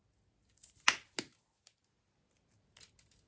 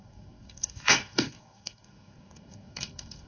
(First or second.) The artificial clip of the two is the second